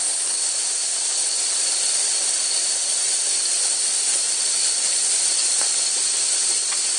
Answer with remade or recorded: recorded